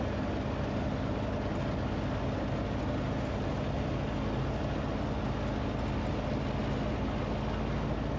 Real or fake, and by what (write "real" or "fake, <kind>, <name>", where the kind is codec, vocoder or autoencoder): real